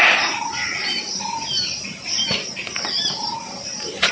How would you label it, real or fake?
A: real